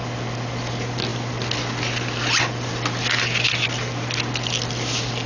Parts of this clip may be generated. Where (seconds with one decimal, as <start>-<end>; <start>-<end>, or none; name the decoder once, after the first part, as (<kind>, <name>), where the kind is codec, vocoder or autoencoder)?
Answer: none